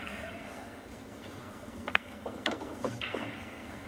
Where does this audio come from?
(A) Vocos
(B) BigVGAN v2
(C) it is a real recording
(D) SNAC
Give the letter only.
D